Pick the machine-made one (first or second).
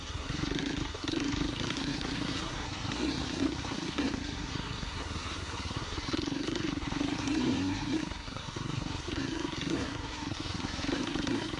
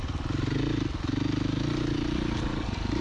first